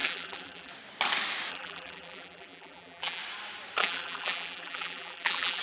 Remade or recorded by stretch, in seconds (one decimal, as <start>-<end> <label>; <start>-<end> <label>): 0.0-0.7 remade; 0.7-1.5 recorded; 1.5-3.2 remade; 3.2-3.8 recorded; 3.8-5.6 remade